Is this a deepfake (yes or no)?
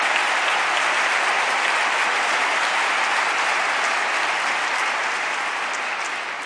no